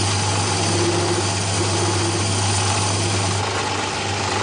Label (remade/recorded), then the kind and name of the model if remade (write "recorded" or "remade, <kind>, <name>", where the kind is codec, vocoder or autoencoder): recorded